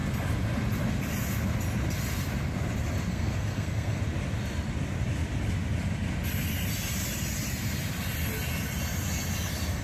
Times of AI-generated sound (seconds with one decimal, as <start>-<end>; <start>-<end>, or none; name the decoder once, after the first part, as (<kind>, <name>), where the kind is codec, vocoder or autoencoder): 3.1-4.0 (codec, SNAC)